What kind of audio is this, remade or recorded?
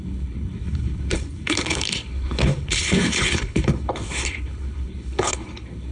remade